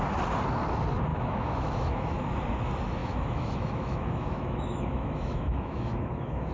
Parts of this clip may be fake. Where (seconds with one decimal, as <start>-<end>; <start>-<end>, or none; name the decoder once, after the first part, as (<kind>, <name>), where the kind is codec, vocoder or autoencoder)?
1.1-2.2 (autoencoder, DAC-VAE); 3.0-6.5